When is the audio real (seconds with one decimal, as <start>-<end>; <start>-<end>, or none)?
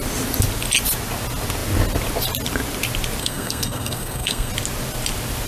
0.0-3.2; 4.5-5.5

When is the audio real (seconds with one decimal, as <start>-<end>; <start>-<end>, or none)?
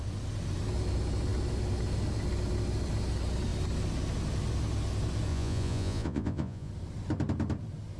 0.0-5.3; 6.7-8.0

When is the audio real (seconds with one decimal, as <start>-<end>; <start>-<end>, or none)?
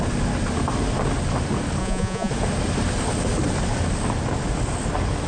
0.0-1.8; 2.3-5.3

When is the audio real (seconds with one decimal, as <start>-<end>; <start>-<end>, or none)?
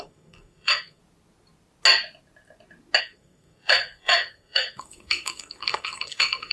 1.0-3.0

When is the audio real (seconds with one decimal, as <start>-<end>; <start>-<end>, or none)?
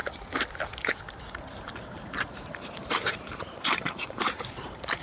0.0-1.0